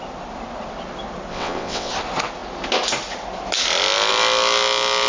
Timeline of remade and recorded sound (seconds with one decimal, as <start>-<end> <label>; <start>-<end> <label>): 0.0-1.3 recorded; 1.3-1.9 remade; 1.9-5.1 recorded